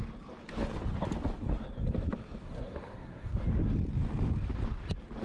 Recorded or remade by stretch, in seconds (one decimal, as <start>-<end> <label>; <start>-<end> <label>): 0.0-2.4 recorded; 2.4-3.3 remade; 3.3-5.2 recorded